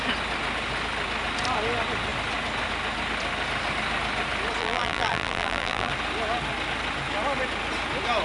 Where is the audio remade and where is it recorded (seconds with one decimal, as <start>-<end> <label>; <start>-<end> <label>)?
0.0-4.6 recorded; 4.6-5.9 remade; 5.9-8.2 recorded